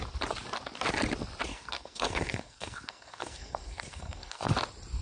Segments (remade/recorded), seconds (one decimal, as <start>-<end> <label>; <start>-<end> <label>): 0.0-1.5 recorded; 1.5-4.5 remade; 4.5-5.0 recorded